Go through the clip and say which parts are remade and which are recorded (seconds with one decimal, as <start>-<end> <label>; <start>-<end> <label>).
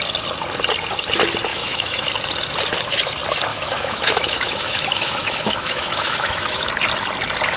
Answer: 0.0-1.5 recorded; 1.5-2.1 remade; 2.1-3.5 recorded; 3.5-6.7 remade; 6.7-7.6 recorded